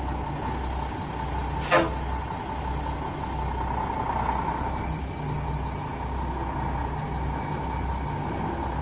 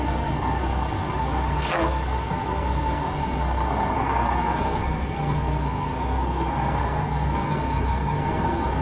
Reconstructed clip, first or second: second